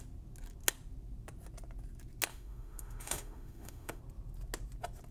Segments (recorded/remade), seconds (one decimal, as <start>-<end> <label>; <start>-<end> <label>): 0.0-2.3 recorded; 2.3-4.0 remade; 4.0-5.1 recorded